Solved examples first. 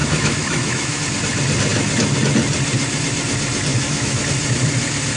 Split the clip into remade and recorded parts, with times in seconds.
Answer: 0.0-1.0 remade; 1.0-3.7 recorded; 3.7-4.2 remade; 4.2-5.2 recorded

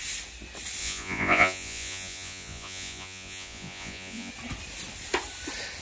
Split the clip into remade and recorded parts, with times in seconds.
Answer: 0.0-0.8 recorded; 0.8-4.3 remade; 4.3-5.8 recorded

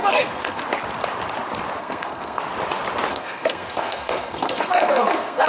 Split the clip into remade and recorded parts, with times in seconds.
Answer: 0.0-0.6 remade; 0.6-1.8 recorded; 1.8-2.4 remade; 2.4-3.1 recorded; 3.1-5.5 remade